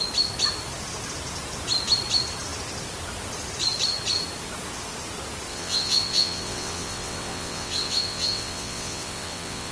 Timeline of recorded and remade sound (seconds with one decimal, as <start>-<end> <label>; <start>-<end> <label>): 0.0-5.5 recorded; 5.5-9.7 remade